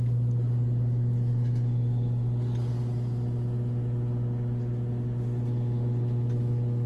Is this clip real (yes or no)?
yes